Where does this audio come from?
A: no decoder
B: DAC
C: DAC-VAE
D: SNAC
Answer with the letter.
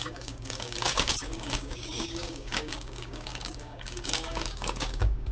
B